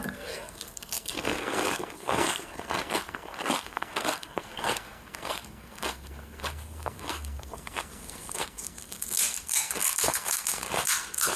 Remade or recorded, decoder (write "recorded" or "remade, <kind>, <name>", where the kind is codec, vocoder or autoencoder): remade, codec, SNAC